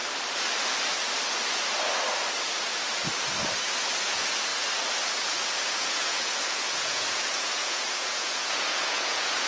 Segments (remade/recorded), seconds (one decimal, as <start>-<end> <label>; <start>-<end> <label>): 0.0-4.0 recorded; 4.0-4.5 remade; 4.5-5.6 recorded; 5.6-9.5 remade